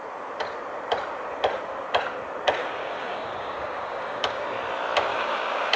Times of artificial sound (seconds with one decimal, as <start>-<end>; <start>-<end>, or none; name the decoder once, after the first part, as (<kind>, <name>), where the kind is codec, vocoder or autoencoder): 2.6-4.4 (codec, DAC); 5.1-5.8